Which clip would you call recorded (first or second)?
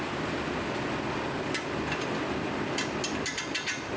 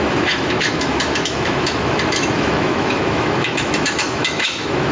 first